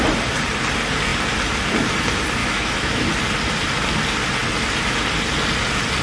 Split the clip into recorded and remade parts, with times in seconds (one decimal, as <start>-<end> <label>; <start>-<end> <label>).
0.0-2.4 recorded; 2.4-3.1 remade; 3.1-6.0 recorded